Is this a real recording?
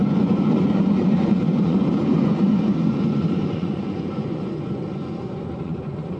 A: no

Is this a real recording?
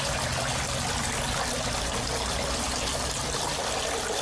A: yes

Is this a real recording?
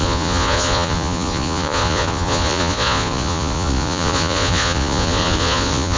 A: no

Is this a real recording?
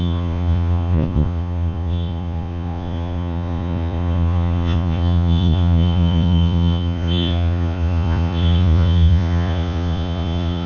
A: no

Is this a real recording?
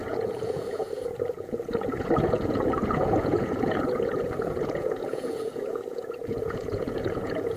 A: no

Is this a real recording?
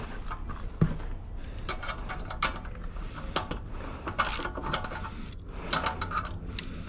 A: yes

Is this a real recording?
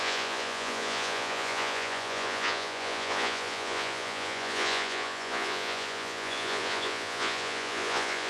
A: no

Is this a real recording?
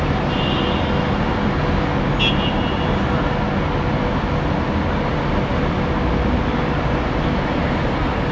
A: yes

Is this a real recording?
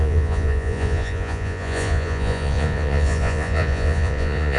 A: no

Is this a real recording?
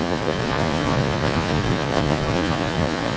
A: no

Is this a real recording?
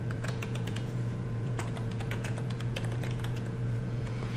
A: no